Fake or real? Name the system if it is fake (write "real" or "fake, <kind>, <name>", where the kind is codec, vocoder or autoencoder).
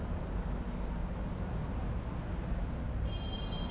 real